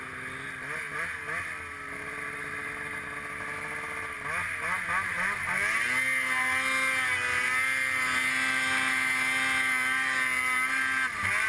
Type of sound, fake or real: real